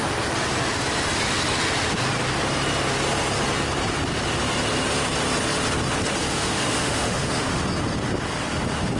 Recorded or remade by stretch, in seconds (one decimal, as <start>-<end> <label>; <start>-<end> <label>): 0.0-6.2 recorded; 6.2-7.6 remade; 7.6-9.0 recorded